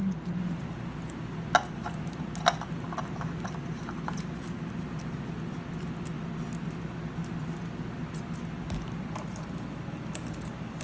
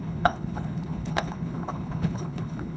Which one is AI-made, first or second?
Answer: second